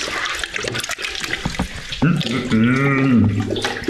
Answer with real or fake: real